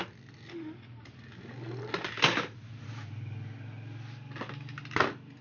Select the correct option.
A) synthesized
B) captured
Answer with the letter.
B